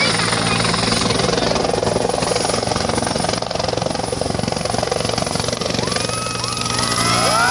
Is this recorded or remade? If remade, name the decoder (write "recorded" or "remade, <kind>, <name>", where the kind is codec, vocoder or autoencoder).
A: recorded